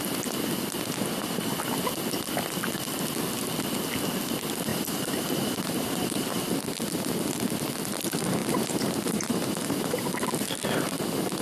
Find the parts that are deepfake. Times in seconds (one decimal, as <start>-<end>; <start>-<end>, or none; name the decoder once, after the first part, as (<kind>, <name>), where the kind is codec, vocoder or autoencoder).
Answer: 4.7-6.4 (vocoder, BigVGAN v2); 8.4-10.3